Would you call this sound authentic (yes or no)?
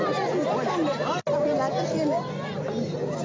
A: yes